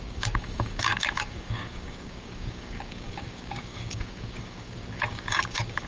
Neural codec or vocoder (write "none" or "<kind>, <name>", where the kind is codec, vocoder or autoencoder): codec, DAC